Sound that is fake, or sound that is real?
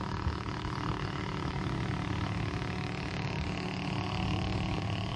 fake